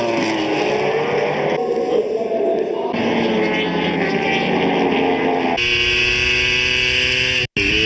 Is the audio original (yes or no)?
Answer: yes